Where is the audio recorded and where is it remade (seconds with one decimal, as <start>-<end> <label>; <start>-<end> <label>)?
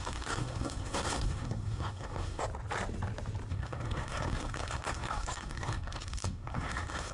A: 0.0-2.4 remade; 2.4-3.5 recorded; 3.5-7.1 remade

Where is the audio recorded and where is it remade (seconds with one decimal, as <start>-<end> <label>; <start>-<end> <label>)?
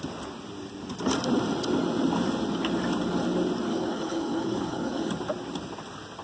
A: 0.0-3.7 recorded; 3.7-5.1 remade; 5.1-6.2 recorded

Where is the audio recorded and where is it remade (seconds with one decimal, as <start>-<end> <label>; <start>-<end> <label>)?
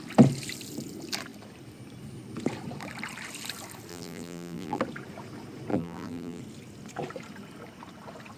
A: 0.0-3.9 recorded; 3.9-4.8 remade; 4.8-5.7 recorded; 5.7-6.4 remade; 6.4-8.4 recorded